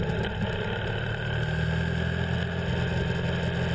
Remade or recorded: recorded